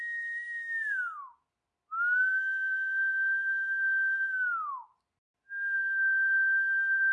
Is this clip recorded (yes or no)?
yes